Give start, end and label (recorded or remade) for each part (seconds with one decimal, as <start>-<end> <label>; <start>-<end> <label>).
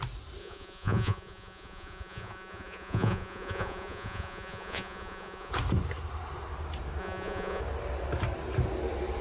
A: 0.0-0.4 recorded; 0.4-5.5 remade; 5.5-7.0 recorded; 7.0-7.6 remade; 7.6-9.2 recorded